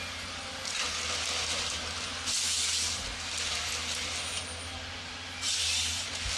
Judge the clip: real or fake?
real